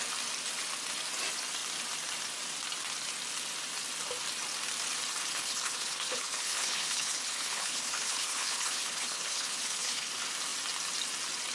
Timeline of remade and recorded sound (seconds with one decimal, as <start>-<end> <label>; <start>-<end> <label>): 0.0-5.2 recorded; 5.2-10.1 remade; 10.1-11.5 recorded